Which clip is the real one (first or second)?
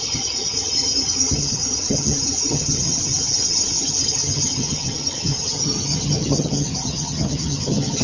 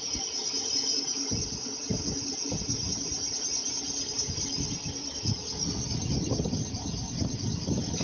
second